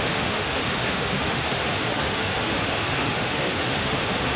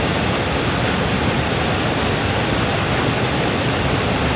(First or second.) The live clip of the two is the second